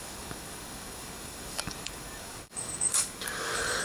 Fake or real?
fake